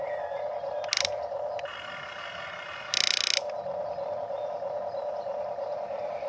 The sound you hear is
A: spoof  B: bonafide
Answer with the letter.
B